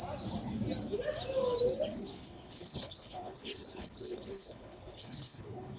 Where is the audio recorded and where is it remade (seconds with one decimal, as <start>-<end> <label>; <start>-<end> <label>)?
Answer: 0.0-1.9 recorded; 1.9-5.8 remade